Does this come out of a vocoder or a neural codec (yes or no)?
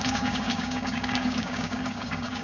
yes